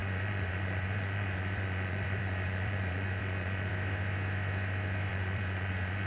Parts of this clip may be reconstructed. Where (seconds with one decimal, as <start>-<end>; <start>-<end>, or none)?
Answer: 0.0-3.7; 5.1-6.1